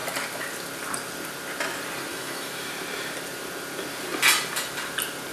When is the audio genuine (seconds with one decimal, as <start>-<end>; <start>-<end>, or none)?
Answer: 0.0-2.1; 2.7-5.3

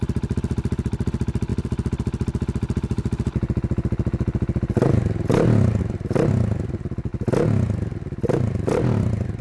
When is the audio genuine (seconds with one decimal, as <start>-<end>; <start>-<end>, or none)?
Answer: 1.5-5.8; 7.1-8.2

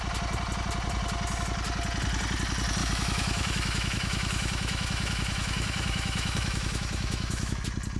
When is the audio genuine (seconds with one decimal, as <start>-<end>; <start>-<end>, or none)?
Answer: 0.0-2.8; 7.6-8.0

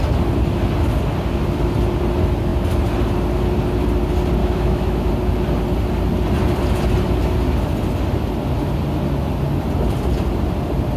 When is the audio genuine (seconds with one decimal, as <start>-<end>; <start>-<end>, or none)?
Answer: 0.0-4.4; 5.1-11.0

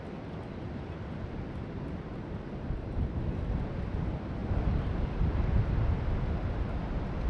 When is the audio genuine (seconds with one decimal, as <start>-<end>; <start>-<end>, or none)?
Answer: 0.0-7.3